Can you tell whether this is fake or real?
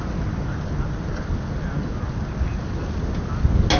real